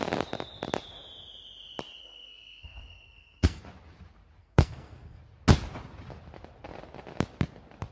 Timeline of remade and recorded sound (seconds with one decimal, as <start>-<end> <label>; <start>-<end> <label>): 0.0-2.0 recorded; 2.0-3.6 remade; 3.6-4.4 recorded; 4.4-5.2 remade; 5.2-7.9 recorded